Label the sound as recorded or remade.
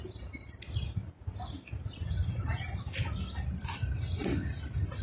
recorded